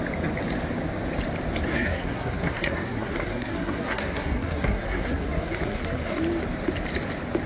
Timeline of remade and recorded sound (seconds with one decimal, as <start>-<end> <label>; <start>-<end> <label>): 0.0-1.7 recorded; 1.7-6.2 remade; 6.2-7.5 recorded